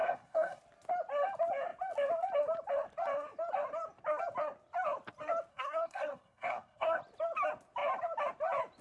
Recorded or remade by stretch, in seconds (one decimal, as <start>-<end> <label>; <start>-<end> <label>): 0.0-0.6 remade; 0.6-5.5 recorded; 5.5-7.0 remade; 7.0-8.8 recorded